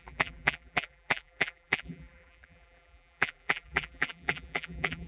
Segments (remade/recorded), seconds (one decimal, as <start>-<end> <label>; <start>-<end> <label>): 0.0-5.1 remade